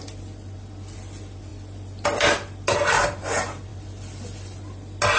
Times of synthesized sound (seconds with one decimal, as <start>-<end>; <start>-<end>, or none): none